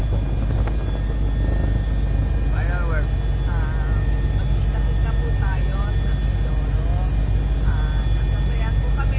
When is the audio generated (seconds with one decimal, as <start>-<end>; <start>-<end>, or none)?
none